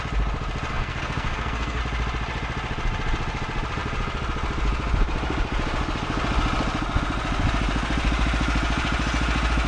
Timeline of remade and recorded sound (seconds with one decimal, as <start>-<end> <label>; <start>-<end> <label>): 0.0-0.7 recorded; 0.7-1.8 remade; 1.8-9.7 recorded